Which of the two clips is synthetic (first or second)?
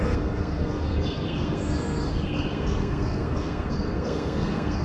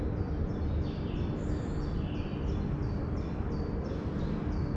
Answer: first